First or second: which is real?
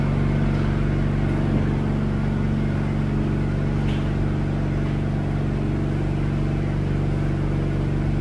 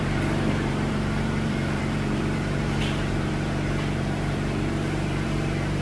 first